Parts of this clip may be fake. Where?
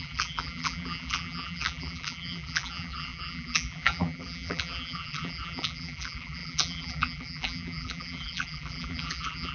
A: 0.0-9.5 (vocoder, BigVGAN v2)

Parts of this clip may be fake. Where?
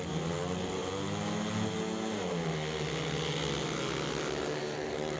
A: 4.6-5.2 (vocoder, BigVGAN v2)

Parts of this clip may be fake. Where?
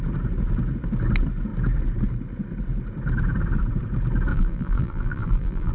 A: 4.3-5.7 (vocoder, BigVGAN v2)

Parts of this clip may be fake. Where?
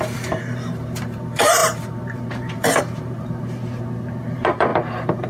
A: 0.0-3.6 (vocoder, BigVGAN v2); 4.2-5.3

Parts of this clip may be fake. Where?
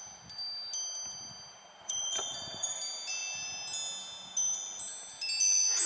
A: 1.8-2.8 (vocoder, BigVGAN v2)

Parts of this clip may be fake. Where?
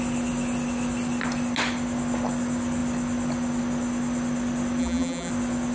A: 4.8-5.3 (vocoder, BigVGAN v2)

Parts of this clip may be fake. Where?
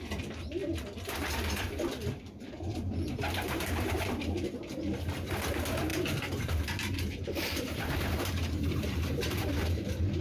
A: 2.7-4.1 (vocoder, BigVGAN v2); 5.9-10.2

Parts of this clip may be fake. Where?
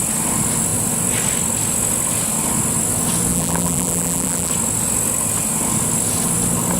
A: 3.3-4.5 (vocoder, BigVGAN v2)